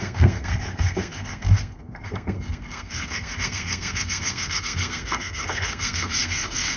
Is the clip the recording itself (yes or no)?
no